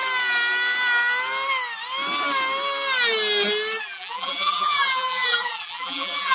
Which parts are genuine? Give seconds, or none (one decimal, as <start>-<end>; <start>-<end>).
0.0-3.8